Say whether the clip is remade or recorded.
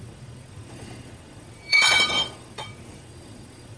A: remade